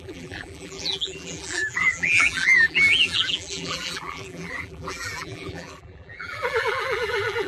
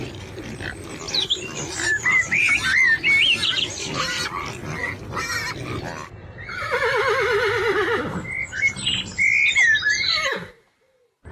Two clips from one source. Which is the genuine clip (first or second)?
second